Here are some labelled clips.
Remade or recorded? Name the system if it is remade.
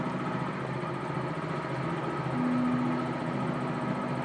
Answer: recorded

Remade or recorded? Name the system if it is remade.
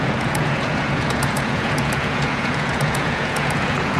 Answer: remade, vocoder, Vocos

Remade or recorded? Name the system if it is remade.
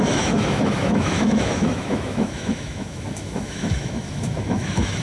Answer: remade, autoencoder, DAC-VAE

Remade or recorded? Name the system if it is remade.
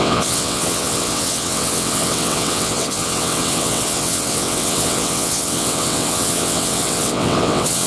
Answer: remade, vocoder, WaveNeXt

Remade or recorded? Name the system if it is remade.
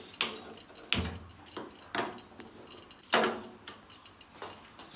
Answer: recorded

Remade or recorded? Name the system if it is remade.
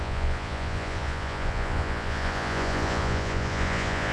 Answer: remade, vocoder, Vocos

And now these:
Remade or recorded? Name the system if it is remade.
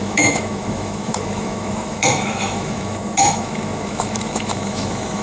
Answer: remade, autoencoder, DAC-VAE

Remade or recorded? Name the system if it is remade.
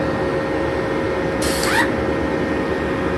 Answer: recorded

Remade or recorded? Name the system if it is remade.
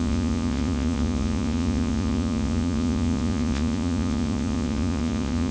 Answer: remade, vocoder, Vocos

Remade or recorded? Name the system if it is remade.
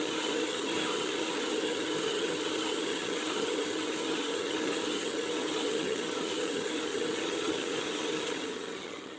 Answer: remade, vocoder, HiFi-GAN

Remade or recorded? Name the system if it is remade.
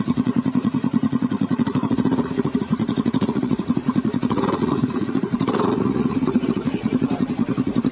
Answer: remade, vocoder, Vocos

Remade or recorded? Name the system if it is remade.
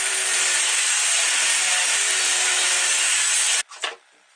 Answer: recorded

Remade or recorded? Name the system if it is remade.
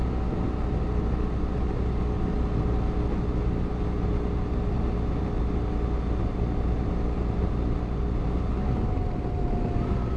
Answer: recorded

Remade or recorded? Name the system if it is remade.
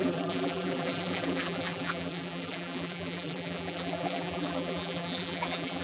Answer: remade, vocoder, BigVGAN v2